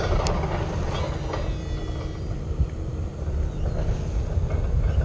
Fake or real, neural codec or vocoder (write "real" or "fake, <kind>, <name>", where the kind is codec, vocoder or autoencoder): real